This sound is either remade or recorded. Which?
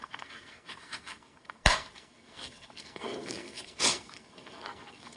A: remade